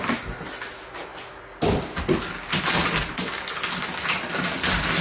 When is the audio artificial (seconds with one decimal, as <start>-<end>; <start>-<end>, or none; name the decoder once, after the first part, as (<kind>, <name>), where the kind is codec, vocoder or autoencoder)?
none